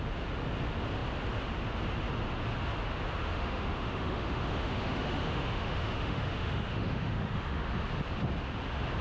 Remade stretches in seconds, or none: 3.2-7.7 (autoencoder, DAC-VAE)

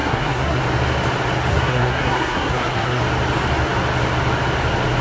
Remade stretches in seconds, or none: 0.0-0.6 (codec, SNAC); 1.5-3.0

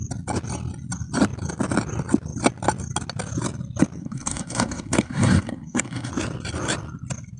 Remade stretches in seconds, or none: 4.0-6.1 (codec, SNAC)

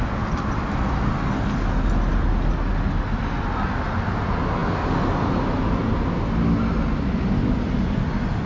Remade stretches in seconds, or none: none

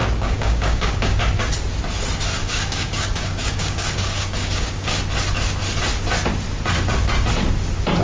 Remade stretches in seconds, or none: 0.0-1.2 (codec, DAC); 2.4-5.0

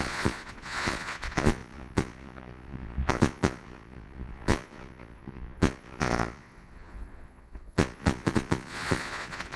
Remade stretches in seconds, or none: 0.0-9.6 (vocoder, Vocos)